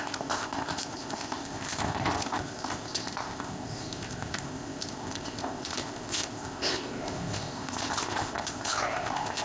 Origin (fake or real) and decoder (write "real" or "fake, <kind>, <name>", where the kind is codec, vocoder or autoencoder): fake, codec, ZipCodec